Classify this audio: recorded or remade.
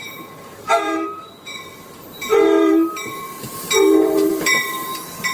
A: remade